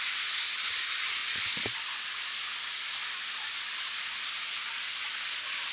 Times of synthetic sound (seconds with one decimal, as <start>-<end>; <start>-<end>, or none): none